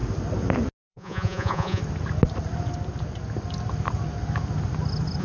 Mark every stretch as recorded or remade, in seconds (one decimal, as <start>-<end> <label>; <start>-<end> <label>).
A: 0.0-0.9 recorded; 0.9-1.8 remade; 1.8-5.2 recorded